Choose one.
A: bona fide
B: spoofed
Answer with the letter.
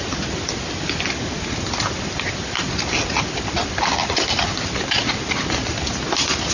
A